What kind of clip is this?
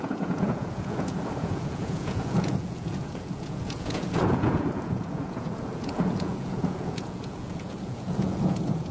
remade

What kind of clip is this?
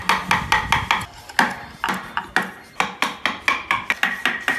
recorded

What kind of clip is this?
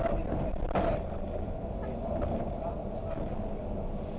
recorded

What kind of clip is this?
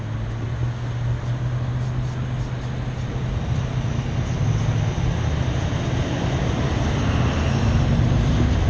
recorded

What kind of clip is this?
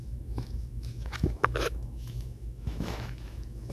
remade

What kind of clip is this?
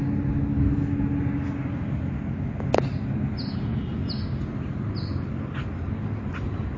recorded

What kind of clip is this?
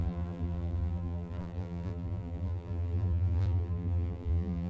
remade